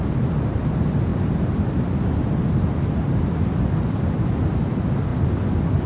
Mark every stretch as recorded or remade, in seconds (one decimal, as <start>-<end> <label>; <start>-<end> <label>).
0.0-5.9 recorded